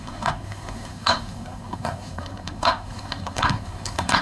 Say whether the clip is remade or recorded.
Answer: remade